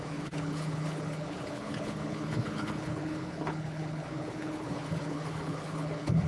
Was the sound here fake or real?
fake